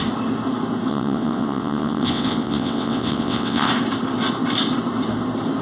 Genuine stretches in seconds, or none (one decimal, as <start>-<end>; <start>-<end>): 0.0-0.9; 3.7-5.6